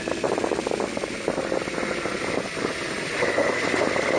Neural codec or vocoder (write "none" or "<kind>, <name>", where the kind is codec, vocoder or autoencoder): none